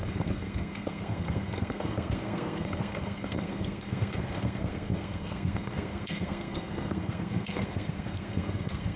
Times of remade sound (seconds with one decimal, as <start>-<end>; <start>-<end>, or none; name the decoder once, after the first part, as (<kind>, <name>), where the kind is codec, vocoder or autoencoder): 0.0-9.0 (codec, SNAC)